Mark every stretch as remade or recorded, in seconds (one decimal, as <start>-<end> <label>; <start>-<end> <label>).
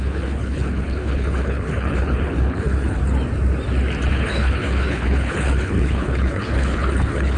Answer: 0.0-3.0 remade; 3.0-4.1 recorded; 4.1-7.4 remade